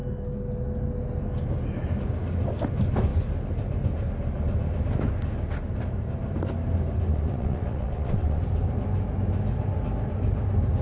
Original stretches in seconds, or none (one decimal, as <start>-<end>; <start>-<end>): 0.0-7.1; 8.4-10.8

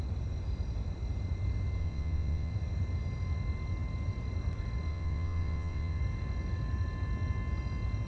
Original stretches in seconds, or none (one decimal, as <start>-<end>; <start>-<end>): 0.0-1.8; 2.5-4.9; 6.0-8.1

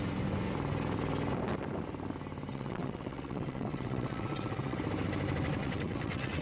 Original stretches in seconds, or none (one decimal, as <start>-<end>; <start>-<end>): 0.0-2.5; 4.8-5.6

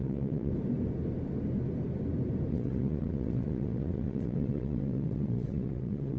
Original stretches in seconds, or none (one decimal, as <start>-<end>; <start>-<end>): 0.5-2.5

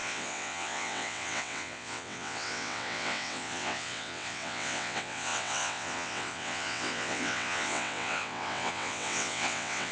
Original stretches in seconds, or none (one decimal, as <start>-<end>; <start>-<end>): none

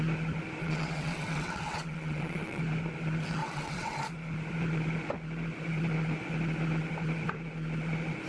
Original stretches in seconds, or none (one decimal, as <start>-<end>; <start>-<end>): 0.0-0.6; 2.6-3.4; 4.0-8.3